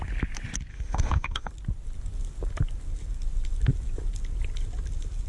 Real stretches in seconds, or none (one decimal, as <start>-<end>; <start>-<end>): 0.0-0.7; 1.5-5.3